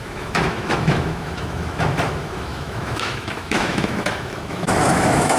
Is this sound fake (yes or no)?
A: yes